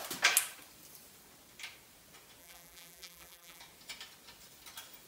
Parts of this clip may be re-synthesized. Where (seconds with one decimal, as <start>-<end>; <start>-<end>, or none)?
2.4-3.6